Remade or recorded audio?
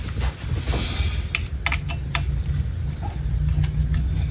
recorded